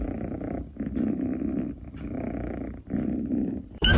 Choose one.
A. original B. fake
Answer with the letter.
B